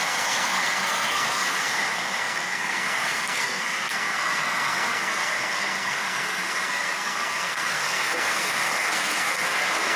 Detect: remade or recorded remade